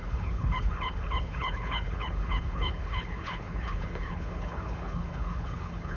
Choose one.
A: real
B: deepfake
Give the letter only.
B